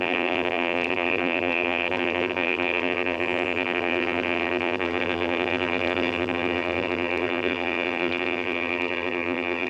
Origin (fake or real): fake